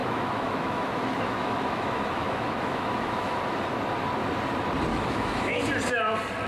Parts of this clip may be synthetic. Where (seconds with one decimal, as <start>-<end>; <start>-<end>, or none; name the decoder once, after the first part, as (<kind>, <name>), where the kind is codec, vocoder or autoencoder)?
0.0-3.4 (autoencoder, DAC-VAE); 4.9-5.6